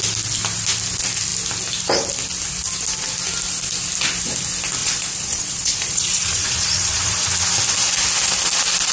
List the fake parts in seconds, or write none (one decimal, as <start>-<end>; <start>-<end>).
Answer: 4.8-7.3